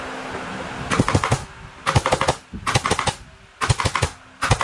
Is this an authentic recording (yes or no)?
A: yes